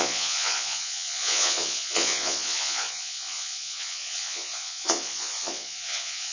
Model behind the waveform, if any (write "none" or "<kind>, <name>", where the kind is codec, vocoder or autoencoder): vocoder, Vocos